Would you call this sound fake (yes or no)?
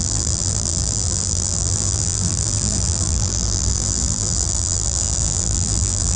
yes